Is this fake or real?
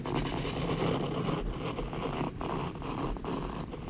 real